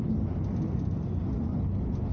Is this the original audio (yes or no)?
yes